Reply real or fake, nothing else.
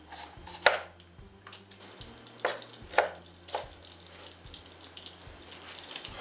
real